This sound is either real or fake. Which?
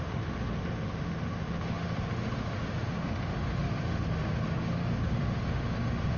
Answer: fake